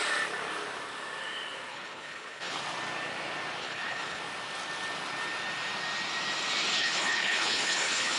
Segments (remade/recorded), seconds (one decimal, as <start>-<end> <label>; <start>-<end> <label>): 0.0-1.7 recorded; 1.7-2.6 remade; 2.6-3.6 recorded; 3.6-4.2 remade; 4.2-6.8 recorded; 6.8-8.2 remade